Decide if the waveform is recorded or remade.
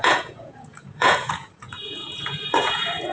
remade